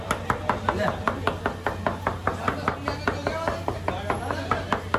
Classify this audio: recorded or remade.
recorded